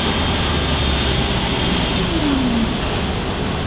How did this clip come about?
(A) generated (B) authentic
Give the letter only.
B